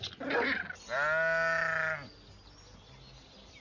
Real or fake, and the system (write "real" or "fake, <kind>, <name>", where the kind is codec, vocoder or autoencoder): real